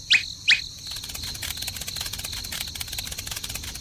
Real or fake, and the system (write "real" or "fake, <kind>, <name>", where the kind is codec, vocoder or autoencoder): real